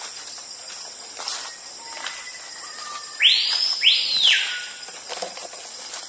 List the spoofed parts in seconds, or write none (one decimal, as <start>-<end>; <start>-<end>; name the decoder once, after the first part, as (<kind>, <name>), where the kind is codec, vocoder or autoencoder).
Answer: none